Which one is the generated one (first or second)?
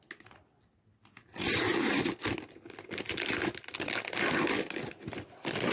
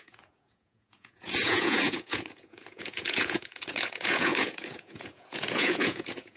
second